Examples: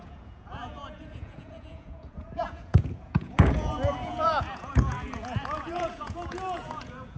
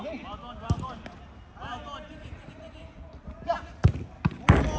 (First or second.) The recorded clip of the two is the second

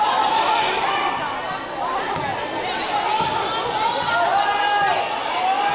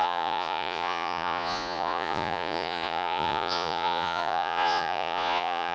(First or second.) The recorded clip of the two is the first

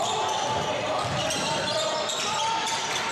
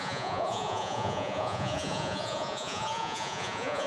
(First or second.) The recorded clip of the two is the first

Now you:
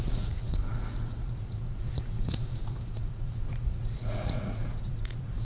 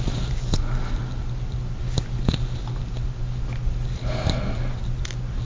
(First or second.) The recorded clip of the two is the second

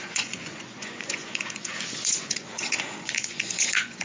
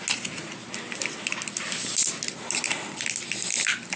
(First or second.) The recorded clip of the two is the second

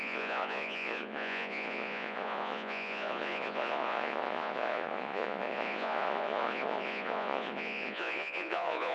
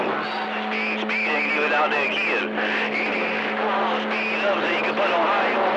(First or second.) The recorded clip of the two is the second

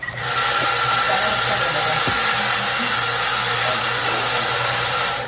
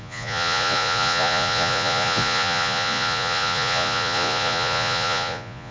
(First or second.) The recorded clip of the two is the first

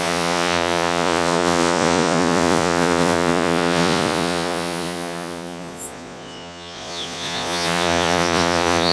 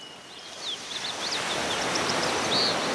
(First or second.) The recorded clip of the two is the second